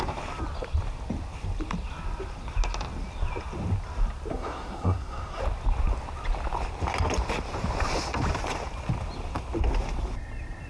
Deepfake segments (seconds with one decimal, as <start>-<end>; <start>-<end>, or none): 4.3-5.4